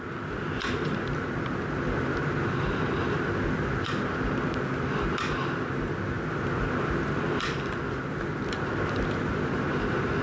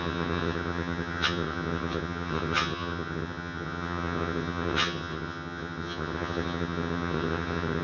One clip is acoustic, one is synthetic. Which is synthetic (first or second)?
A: second